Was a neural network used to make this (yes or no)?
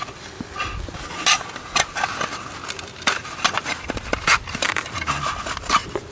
no